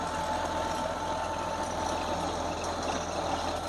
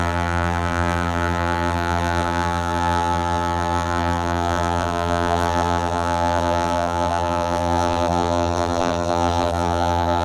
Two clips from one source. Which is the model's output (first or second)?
second